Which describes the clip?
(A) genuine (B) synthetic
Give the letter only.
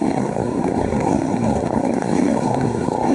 B